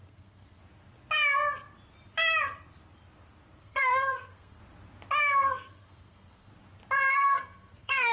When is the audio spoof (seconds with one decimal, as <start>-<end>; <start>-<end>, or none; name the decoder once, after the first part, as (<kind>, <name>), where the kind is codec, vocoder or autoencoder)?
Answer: 0.0-0.6 (codec, SNAC); 3.6-4.6; 5.2-6.5; 7.1-8.1